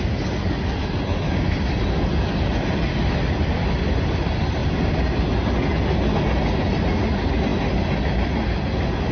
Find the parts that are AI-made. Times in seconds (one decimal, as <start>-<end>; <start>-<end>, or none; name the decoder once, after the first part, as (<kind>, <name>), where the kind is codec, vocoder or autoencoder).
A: none